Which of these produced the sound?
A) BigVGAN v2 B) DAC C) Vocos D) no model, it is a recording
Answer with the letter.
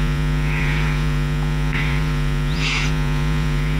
C